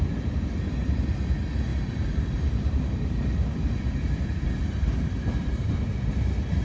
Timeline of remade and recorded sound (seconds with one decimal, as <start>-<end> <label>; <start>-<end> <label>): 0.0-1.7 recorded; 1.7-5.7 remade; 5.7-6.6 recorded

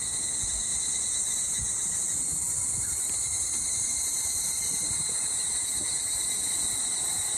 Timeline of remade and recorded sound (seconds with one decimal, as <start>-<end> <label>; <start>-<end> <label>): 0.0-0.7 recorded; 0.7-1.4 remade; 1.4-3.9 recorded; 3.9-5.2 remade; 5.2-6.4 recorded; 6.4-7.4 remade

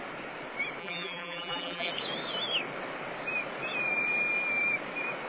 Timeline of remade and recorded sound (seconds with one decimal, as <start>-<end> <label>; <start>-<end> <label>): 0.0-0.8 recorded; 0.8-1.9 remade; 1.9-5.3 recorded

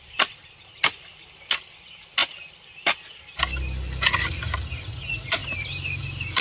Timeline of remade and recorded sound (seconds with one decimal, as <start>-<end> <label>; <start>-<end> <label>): 0.0-5.4 recorded; 5.4-6.0 remade; 6.0-6.4 recorded

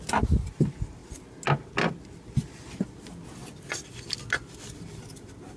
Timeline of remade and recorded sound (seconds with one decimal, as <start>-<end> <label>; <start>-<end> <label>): 0.0-3.4 recorded; 3.4-4.2 remade; 4.2-5.6 recorded

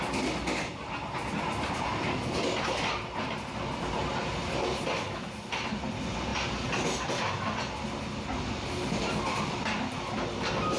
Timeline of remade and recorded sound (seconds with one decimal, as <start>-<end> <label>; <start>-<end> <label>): 0.0-10.8 recorded

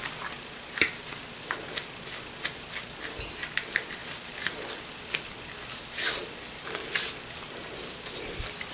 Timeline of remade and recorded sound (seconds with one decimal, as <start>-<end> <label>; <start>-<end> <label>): 0.0-8.7 recorded

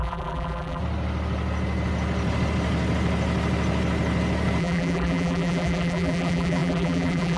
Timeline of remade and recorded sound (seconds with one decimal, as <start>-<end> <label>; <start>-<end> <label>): 0.0-0.8 remade; 0.8-4.6 recorded; 4.6-7.4 remade